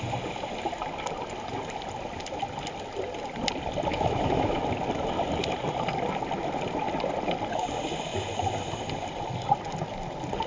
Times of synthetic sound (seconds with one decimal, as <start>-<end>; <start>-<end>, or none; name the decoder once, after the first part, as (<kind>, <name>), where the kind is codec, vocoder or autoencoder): 3.9-4.6 (autoencoder, DAC-VAE)